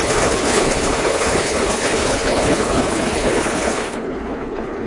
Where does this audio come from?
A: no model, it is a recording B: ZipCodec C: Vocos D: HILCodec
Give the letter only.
D